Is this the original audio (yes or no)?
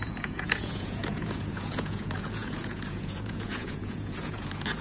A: no